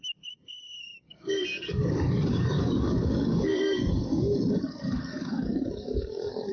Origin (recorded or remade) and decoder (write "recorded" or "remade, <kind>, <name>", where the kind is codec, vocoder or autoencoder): remade, codec, DAC